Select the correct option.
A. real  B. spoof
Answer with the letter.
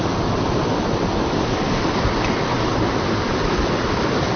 A